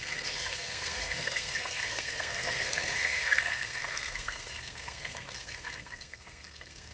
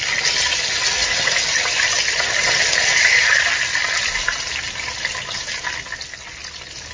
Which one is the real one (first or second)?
second